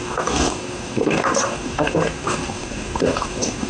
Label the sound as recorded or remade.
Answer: remade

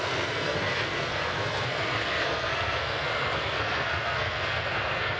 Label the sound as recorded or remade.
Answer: remade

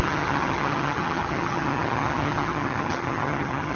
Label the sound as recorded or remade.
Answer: remade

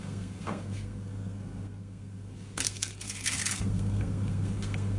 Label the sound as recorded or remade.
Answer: remade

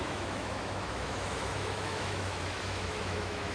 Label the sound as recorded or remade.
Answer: remade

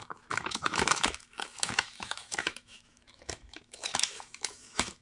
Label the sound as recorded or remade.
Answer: remade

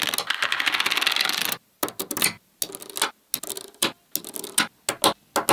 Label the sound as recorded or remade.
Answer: recorded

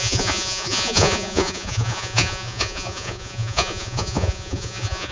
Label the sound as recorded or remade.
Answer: remade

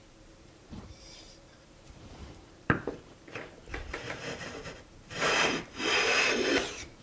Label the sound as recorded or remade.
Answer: remade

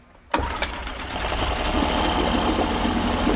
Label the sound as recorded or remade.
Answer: recorded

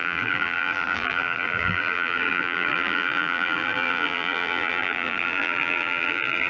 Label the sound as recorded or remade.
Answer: remade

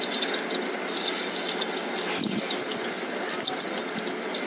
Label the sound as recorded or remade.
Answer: recorded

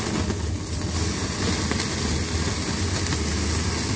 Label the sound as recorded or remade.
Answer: recorded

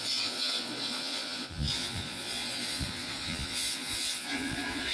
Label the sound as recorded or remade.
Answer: remade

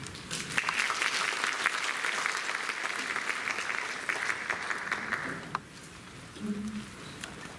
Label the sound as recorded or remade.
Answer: recorded